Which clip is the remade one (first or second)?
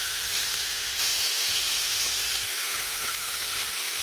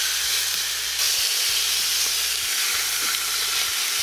first